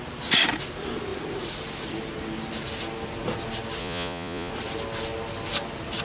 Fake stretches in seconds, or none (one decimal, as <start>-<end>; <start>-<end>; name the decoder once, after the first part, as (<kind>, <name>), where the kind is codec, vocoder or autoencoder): 3.8-4.5 (vocoder, Vocos)